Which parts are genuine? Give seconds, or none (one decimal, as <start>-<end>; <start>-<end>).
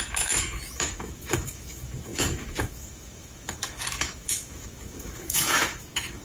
none